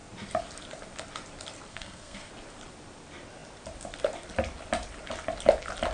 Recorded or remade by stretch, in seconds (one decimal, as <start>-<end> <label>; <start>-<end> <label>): 0.0-1.7 recorded; 1.7-2.3 remade; 2.3-5.9 recorded